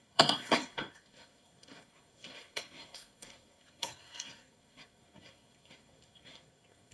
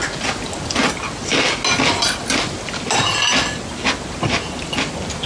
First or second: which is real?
second